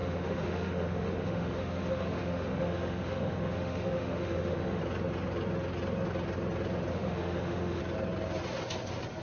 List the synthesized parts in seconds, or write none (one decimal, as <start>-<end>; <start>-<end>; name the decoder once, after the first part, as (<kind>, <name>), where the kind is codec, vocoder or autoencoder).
0.0-4.8 (autoencoder, DAC-VAE); 6.9-7.8